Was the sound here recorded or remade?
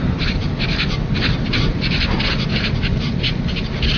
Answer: recorded